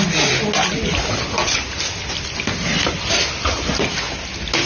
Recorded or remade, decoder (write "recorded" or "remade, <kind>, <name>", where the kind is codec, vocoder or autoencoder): recorded